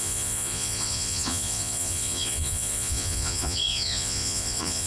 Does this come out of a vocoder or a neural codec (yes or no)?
yes